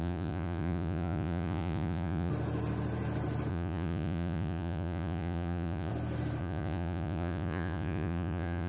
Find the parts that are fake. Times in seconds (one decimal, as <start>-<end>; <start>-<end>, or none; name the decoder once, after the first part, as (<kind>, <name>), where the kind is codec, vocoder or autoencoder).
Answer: 0.0-2.3 (vocoder, Vocos); 3.5-5.9; 6.4-8.7